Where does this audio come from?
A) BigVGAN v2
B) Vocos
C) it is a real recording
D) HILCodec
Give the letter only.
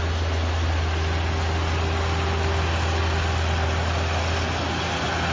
C